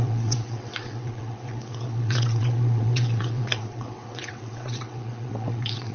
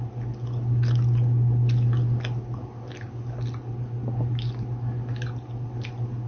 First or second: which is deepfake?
first